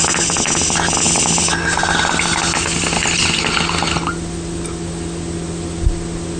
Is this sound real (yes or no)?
yes